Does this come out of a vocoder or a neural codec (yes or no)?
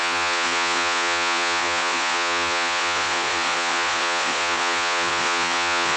yes